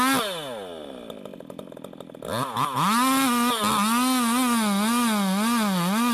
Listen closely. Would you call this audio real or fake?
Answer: real